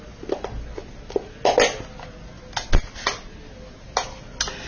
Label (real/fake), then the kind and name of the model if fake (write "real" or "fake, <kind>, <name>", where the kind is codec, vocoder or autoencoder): real